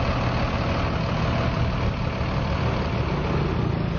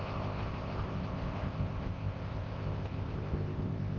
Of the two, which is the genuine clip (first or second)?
first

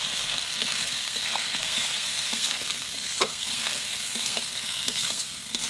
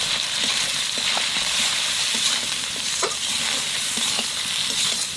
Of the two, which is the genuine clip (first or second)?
second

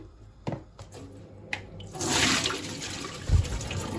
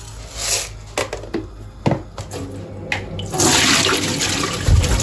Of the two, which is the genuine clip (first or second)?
second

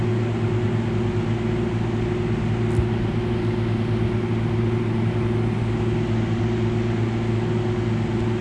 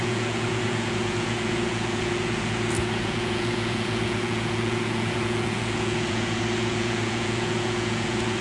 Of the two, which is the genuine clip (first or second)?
first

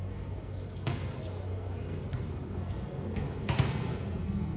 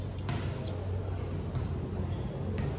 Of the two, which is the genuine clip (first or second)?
second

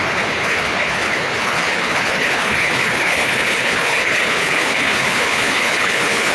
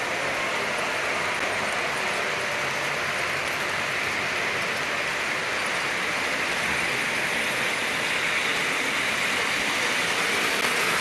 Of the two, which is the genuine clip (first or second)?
second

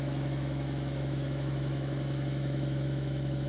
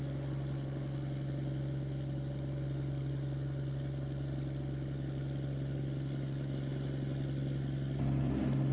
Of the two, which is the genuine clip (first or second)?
second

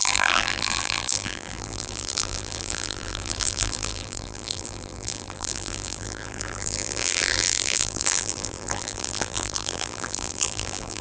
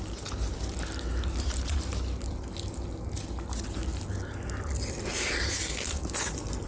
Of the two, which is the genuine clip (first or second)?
second